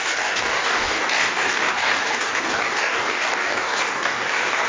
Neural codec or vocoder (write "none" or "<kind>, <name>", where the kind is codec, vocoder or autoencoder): codec, DAC